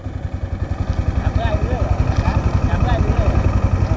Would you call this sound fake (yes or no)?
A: no